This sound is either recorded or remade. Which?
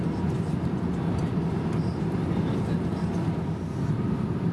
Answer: recorded